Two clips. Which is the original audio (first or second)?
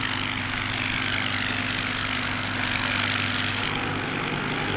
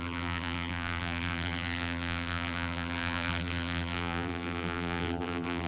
first